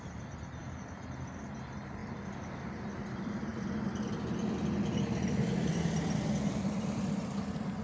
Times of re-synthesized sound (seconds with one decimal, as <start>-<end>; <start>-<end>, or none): 0.0-0.6; 1.5-3.5; 6.5-7.8